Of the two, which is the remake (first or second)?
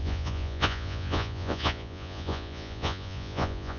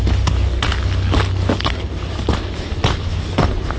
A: first